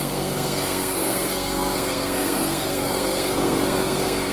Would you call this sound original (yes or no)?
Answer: no